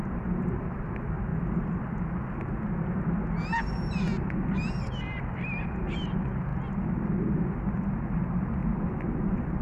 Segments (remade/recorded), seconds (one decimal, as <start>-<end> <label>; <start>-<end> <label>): 0.0-1.3 remade; 1.3-4.8 recorded; 4.8-6.5 remade; 6.5-8.2 recorded; 8.2-8.6 remade; 8.6-9.2 recorded; 9.2-9.6 remade